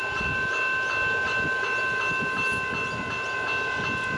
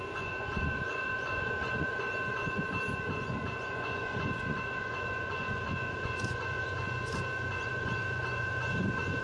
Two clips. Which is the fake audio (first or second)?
second